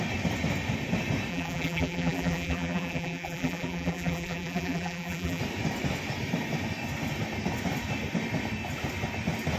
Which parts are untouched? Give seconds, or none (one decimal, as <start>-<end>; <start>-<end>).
0.0-1.3; 5.4-9.6